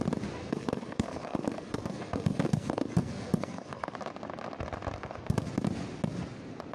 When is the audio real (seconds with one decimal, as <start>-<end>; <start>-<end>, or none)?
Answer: 0.0-0.4; 4.0-5.0; 5.5-6.7